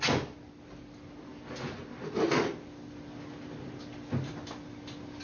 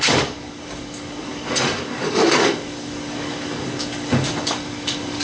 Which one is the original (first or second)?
first